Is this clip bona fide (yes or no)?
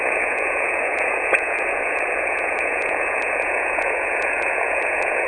no